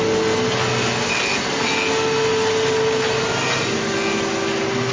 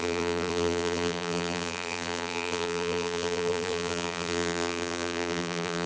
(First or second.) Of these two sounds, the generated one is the second